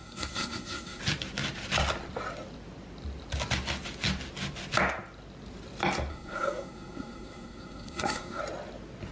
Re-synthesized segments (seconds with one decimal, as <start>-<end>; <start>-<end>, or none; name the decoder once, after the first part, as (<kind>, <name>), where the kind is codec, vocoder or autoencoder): 0.0-1.0 (codec, SNAC); 6.1-8.4